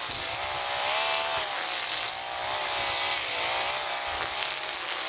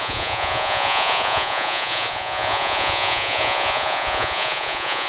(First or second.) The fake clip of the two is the second